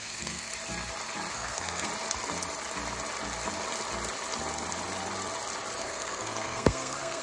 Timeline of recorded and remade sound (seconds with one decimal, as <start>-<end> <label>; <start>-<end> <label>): 0.0-0.5 remade; 0.5-1.3 recorded; 1.3-1.9 remade; 1.9-5.8 recorded; 5.8-7.2 remade